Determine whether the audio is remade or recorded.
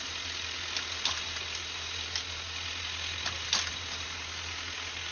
recorded